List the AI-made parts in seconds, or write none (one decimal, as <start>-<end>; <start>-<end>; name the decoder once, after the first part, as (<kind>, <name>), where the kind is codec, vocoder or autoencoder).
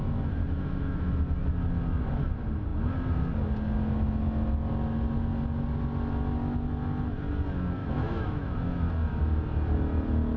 0.4-1.1 (autoencoder, DAC-VAE); 7.8-8.5